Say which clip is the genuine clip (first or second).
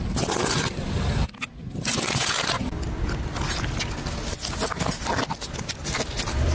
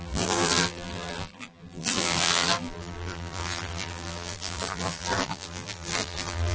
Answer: first